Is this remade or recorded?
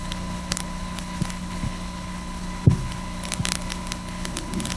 remade